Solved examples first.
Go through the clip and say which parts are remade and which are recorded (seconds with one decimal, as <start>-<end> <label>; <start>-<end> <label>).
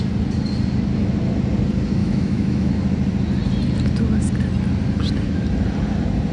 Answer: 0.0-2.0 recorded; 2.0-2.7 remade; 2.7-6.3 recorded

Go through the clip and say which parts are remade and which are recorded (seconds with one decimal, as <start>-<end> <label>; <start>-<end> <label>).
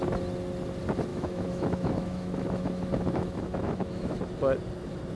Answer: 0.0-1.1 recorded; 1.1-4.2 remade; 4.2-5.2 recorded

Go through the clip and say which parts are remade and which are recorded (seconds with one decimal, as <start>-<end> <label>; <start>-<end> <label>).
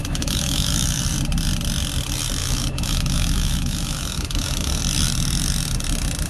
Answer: 0.0-1.0 remade; 1.0-2.4 recorded; 2.4-4.8 remade; 4.8-6.3 recorded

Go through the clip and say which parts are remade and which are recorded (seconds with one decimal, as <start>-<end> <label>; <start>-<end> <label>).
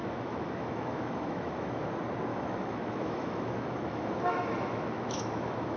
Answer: 0.0-1.9 remade; 1.9-2.3 recorded; 2.3-5.8 remade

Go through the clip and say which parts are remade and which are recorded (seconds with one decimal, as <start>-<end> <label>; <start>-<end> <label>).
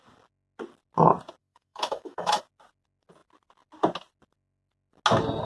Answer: 0.0-1.4 recorded; 1.4-2.4 remade; 2.4-5.4 recorded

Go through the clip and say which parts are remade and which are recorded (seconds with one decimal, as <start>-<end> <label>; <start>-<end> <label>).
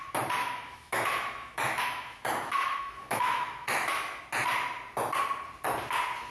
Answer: 0.0-0.4 recorded; 0.4-4.2 remade; 4.2-6.3 recorded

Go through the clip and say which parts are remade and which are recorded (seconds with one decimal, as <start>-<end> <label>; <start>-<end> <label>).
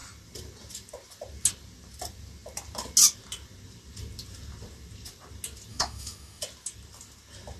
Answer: 0.0-5.7 recorded; 5.7-6.4 remade; 6.4-7.6 recorded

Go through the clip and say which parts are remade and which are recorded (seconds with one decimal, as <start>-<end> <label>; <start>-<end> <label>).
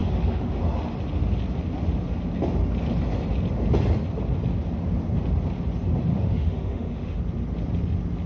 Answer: 0.0-0.6 remade; 0.6-6.1 recorded; 6.1-7.2 remade; 7.2-8.3 recorded